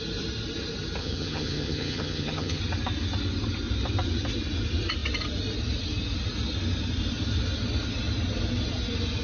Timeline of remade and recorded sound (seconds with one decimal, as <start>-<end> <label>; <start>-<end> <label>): 0.0-1.0 recorded; 1.0-2.6 remade; 2.6-9.2 recorded